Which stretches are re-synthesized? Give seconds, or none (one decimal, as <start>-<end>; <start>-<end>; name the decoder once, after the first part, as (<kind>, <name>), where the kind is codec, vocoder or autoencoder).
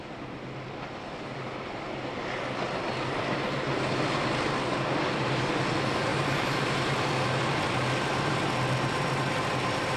none